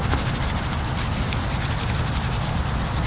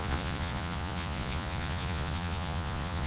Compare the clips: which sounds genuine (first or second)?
first